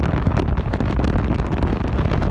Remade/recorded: recorded